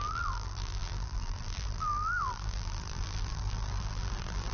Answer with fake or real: fake